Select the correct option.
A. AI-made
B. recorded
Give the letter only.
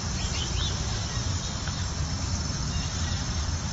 A